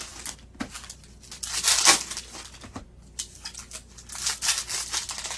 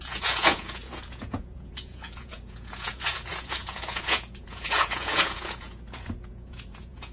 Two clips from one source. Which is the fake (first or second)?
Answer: second